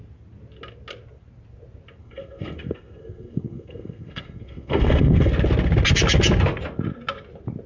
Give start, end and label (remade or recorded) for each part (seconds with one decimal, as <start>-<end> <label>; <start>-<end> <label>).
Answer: 0.0-2.0 recorded; 2.0-5.3 remade; 5.3-7.7 recorded